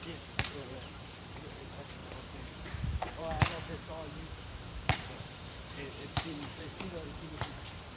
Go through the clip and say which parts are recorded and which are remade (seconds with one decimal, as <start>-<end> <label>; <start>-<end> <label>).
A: 0.0-8.0 remade